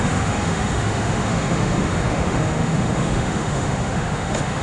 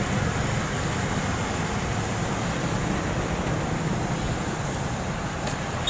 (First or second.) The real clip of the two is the second